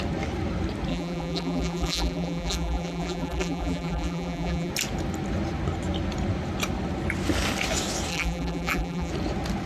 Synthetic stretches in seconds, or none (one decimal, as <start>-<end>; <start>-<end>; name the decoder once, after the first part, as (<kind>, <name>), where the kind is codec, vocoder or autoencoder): 0.9-4.7 (vocoder, BigVGAN v2); 8.1-9.1